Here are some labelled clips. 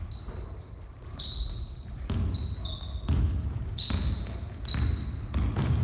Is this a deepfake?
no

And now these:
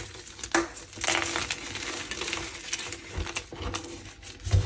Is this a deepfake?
no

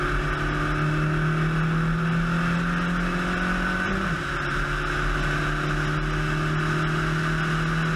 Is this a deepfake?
no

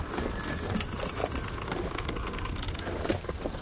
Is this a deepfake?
no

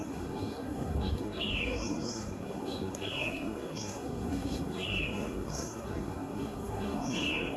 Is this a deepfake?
yes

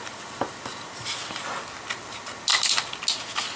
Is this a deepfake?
no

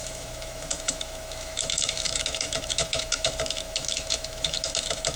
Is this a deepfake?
yes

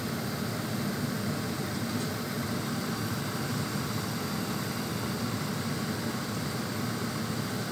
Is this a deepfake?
no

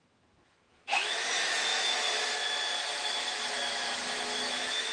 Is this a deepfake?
yes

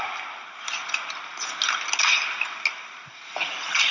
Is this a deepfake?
no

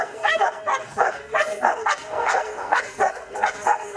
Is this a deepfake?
yes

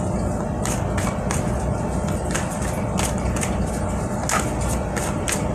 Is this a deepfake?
no